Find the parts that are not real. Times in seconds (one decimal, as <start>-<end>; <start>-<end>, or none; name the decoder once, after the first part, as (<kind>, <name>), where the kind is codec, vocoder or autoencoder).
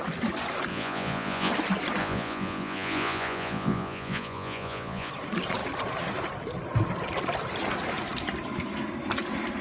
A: 0.7-1.5 (vocoder, Vocos); 2.0-5.1